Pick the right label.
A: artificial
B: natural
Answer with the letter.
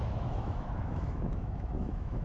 A